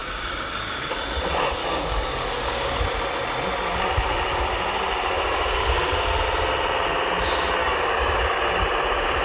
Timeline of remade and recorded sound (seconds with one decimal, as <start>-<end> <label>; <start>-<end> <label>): 0.0-0.9 remade; 0.9-1.6 recorded; 1.6-2.8 remade; 2.8-7.6 recorded; 7.6-8.6 remade; 8.6-9.2 recorded